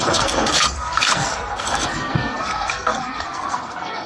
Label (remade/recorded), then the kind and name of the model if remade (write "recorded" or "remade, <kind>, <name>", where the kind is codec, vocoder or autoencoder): remade, codec, SNAC